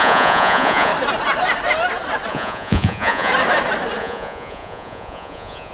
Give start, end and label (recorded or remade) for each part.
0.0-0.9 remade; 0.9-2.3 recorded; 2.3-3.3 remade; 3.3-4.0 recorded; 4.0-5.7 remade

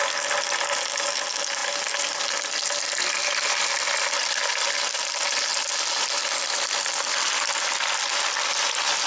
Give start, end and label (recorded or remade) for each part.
0.0-9.1 recorded

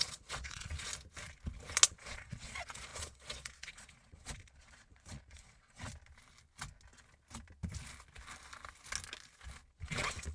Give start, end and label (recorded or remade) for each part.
0.0-0.9 remade; 0.9-1.9 recorded; 1.9-5.9 remade; 5.9-9.7 recorded; 9.7-10.3 remade